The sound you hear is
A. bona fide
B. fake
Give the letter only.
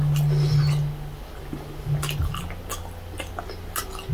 A